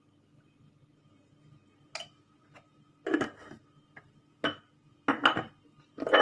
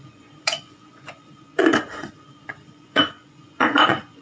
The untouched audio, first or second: first